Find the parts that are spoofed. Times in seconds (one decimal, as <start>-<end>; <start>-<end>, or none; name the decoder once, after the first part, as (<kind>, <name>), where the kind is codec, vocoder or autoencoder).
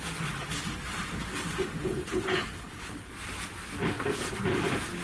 1.8-3.1 (codec, HILCodec)